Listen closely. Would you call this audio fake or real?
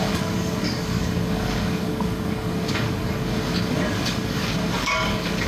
fake